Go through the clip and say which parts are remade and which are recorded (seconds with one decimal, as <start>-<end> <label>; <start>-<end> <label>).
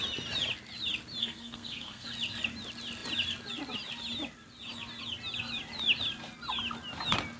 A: 0.0-1.2 recorded; 1.2-2.1 remade; 2.1-7.4 recorded